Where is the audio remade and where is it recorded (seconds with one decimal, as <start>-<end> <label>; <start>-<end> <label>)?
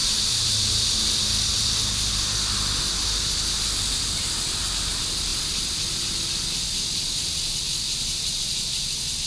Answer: 0.0-0.9 remade; 0.9-1.5 recorded; 1.5-2.1 remade; 2.1-9.3 recorded